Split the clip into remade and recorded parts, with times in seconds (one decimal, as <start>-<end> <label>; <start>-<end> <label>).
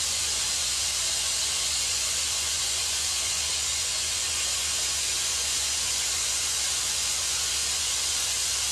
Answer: 0.0-8.7 remade